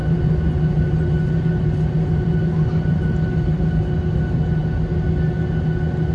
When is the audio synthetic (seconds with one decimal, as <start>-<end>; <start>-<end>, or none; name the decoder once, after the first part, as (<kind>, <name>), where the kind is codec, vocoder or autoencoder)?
0.0-3.7 (vocoder, BigVGAN v2)

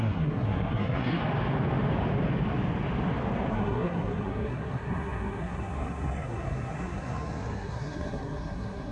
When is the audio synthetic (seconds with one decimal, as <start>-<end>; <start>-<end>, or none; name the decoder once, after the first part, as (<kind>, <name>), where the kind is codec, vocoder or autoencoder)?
0.0-1.2 (codec, SNAC); 3.5-8.9

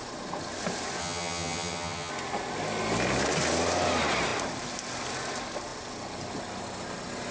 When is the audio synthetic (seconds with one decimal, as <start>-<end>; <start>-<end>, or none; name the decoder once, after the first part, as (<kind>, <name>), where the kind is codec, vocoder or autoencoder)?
1.0-2.1 (vocoder, HiFi-GAN)

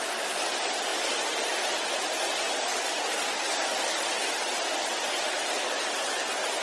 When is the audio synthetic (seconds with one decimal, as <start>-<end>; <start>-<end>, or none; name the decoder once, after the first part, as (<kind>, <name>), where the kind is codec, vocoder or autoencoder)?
none

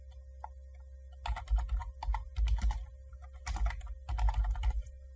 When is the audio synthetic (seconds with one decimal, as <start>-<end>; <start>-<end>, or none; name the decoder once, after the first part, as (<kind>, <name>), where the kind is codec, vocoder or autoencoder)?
none

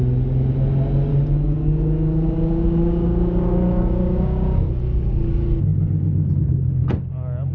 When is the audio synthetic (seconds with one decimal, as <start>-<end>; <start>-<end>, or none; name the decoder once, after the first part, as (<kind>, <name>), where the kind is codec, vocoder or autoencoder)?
1.1-4.7 (codec, DAC)

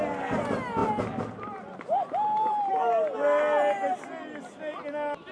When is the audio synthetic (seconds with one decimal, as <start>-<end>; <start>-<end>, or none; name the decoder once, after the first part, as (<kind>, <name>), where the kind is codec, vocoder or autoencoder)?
none

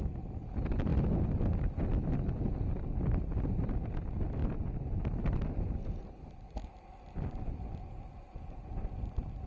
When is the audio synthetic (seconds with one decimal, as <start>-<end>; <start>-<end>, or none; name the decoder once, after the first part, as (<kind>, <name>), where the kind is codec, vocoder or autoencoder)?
4.4-7.8 (vocoder, BigVGAN v2)